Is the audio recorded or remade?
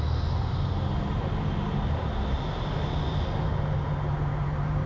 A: recorded